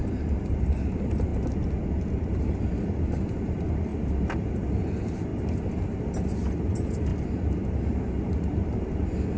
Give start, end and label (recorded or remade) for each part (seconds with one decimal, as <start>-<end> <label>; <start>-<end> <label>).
0.0-1.3 remade; 1.3-2.3 recorded; 2.3-3.9 remade; 3.9-4.8 recorded; 4.8-5.3 remade; 5.3-6.5 recorded; 6.5-7.1 remade; 7.1-7.7 recorded; 7.7-9.4 remade

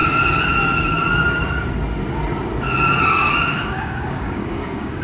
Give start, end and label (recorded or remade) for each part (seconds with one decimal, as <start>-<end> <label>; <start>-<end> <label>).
0.0-3.0 recorded; 3.0-5.0 remade

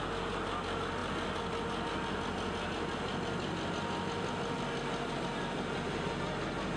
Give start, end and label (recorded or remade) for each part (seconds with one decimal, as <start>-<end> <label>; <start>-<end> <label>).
0.0-6.8 recorded

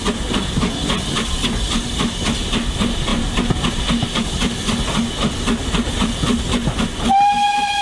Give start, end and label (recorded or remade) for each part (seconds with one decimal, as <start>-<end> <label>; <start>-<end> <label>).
0.0-7.8 recorded